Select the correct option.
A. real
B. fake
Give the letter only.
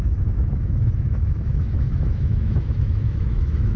B